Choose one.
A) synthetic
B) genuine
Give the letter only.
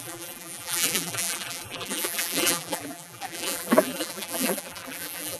A